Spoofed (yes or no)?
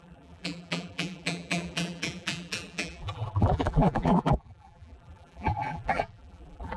yes